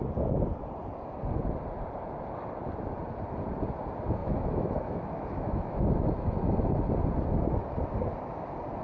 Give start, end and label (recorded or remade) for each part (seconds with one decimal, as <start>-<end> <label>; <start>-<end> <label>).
0.0-4.2 recorded; 4.2-5.8 remade; 5.8-8.8 recorded

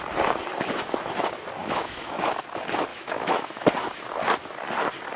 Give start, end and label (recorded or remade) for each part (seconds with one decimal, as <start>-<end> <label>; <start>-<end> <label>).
0.0-1.6 recorded; 1.6-2.2 remade; 2.2-2.9 recorded; 2.9-3.6 remade; 3.6-5.2 recorded

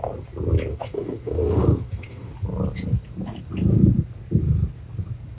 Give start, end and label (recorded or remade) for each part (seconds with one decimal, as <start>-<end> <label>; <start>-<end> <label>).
0.0-0.7 recorded; 0.7-2.3 remade; 2.3-5.4 recorded

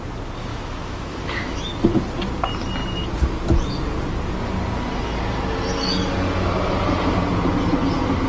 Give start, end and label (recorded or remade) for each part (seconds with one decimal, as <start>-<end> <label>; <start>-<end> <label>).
0.0-0.5 recorded; 0.5-1.6 remade; 1.6-8.3 recorded

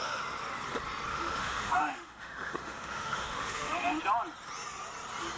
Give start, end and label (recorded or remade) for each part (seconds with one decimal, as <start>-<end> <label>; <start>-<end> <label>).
0.0-1.1 recorded; 1.1-4.0 remade; 4.0-5.4 recorded